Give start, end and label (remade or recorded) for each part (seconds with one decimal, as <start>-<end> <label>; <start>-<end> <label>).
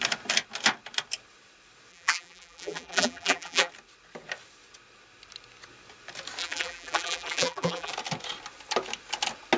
0.0-1.9 recorded; 1.9-3.7 remade; 3.7-6.4 recorded; 6.4-7.9 remade; 7.9-9.6 recorded